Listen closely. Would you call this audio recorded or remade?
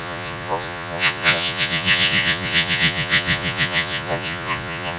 remade